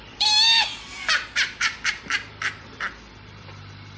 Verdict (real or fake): fake